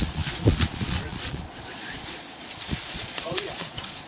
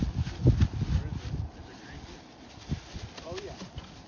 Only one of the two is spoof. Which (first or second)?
first